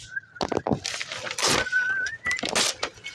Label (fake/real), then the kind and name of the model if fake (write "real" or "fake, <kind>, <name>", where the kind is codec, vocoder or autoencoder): real